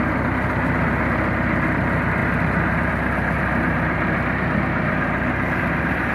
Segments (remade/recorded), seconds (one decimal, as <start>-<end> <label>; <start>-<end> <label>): 0.0-6.1 recorded